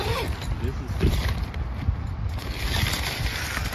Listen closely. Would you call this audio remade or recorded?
recorded